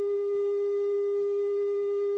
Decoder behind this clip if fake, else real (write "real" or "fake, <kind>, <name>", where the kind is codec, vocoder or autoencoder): fake, codec, SNAC